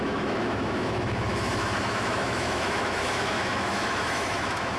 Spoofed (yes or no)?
yes